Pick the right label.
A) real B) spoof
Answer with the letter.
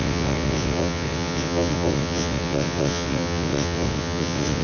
B